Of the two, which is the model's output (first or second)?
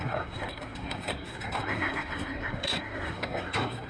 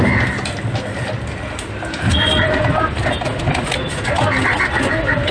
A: first